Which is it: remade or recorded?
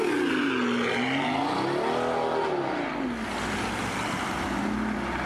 recorded